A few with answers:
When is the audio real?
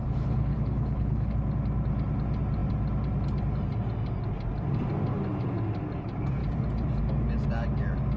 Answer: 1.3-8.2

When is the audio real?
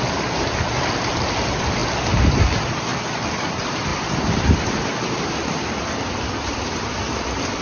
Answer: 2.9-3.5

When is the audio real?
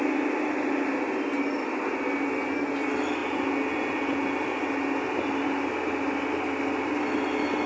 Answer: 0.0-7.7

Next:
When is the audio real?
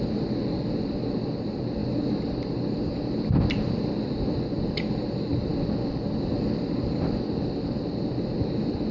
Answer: 0.0-8.9